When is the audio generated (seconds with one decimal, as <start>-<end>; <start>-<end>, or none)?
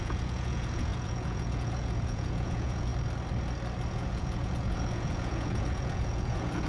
0.0-2.9; 3.9-6.7